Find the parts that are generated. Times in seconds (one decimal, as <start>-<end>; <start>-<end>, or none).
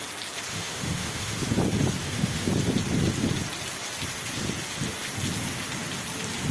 0.5-1.5; 2.0-2.5